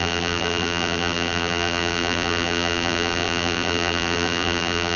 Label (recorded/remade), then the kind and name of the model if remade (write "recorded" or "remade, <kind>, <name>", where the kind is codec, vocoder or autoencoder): remade, vocoder, BigVGAN v2